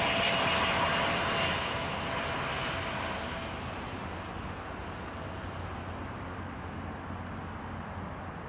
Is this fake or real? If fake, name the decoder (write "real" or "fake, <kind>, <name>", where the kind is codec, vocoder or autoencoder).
real